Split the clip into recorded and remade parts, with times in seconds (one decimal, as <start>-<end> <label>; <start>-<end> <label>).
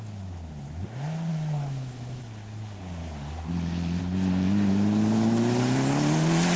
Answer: 0.0-1.3 recorded; 1.3-2.2 remade; 2.2-6.6 recorded